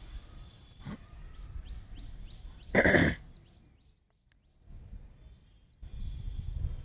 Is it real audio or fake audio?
real